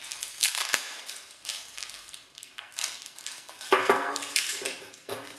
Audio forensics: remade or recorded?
remade